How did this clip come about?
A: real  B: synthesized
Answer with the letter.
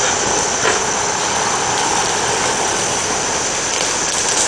A